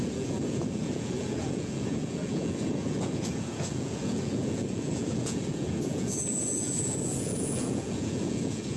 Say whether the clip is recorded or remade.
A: remade